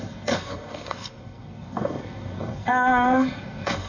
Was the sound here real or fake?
fake